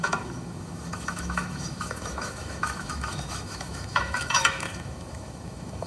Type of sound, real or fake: fake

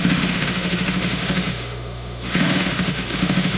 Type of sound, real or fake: fake